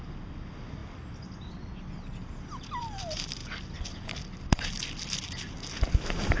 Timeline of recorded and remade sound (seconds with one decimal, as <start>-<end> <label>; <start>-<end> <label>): 0.0-6.4 recorded